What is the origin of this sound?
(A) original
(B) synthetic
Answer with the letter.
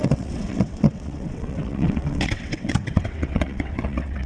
B